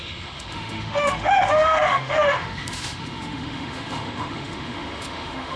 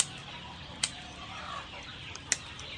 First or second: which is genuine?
second